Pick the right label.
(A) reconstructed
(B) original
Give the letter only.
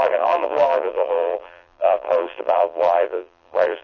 A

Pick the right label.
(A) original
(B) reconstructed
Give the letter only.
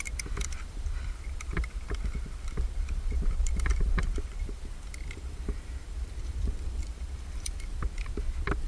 B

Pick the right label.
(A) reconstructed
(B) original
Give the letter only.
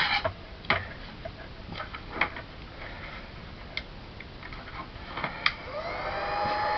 B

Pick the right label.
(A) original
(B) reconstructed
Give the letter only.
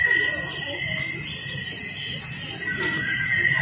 A